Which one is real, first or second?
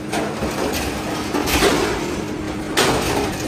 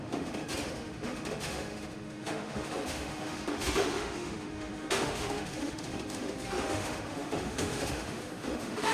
first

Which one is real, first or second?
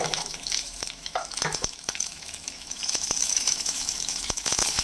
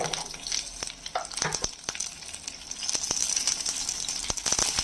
second